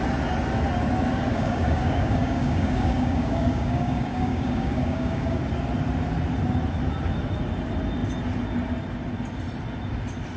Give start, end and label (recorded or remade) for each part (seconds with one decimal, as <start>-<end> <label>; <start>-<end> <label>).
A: 0.0-1.3 recorded; 1.3-5.4 remade; 5.4-10.4 recorded